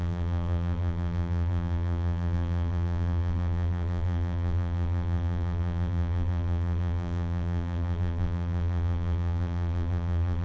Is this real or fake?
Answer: fake